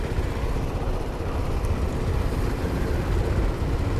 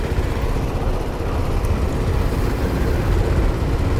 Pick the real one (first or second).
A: second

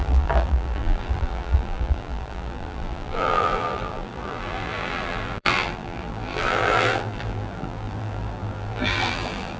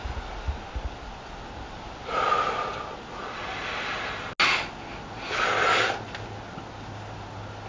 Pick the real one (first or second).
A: second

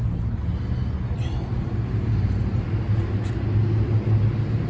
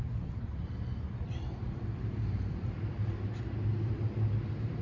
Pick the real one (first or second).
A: first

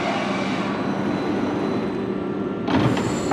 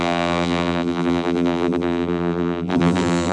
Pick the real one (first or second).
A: first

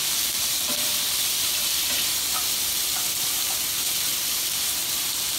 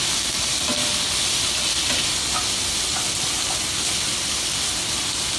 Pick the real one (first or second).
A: second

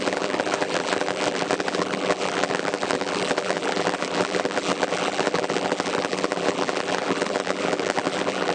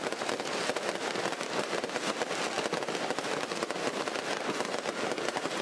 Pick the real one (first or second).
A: second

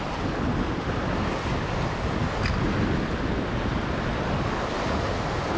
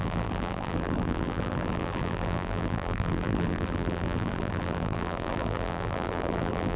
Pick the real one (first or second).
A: first